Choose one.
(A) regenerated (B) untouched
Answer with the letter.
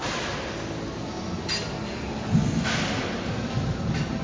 B